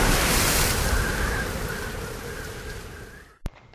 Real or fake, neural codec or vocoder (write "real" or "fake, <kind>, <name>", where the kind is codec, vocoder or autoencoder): real